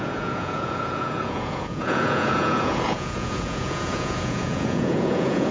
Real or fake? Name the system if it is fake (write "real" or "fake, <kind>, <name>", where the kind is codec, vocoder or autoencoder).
fake, vocoder, Vocos